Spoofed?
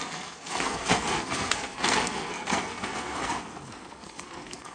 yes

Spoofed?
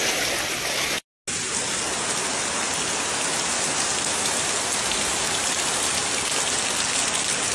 no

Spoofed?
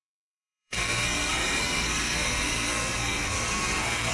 yes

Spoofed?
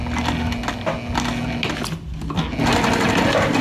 no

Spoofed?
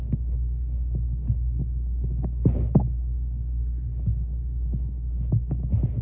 no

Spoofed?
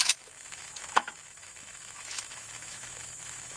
yes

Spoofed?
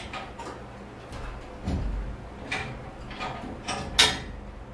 no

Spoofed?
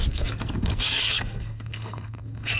yes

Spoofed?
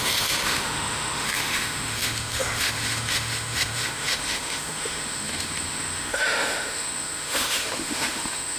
yes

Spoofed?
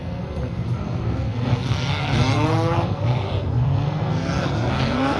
yes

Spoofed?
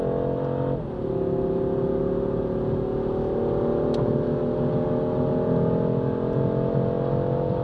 no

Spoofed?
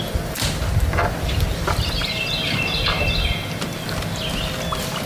no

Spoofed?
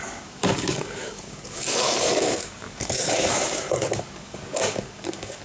yes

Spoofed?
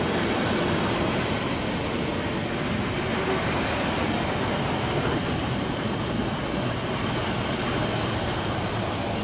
no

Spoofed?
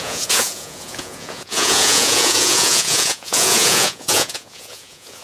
yes